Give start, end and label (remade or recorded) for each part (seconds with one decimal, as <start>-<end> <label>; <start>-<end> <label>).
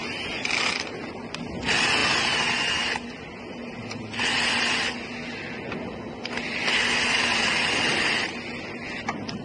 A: 0.0-9.4 recorded